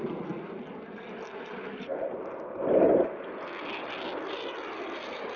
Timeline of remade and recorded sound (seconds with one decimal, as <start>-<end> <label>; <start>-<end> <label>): 0.0-5.4 recorded